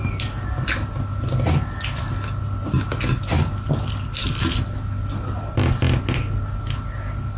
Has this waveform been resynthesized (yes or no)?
no